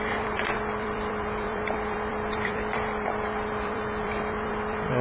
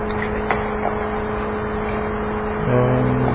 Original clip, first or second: second